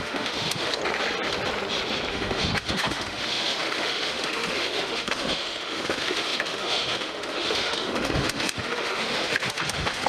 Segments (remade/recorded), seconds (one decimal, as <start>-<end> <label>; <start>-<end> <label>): 0.0-0.8 remade; 0.8-2.1 recorded; 2.1-10.1 remade